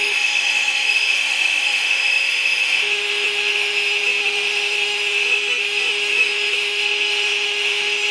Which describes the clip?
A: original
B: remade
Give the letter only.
B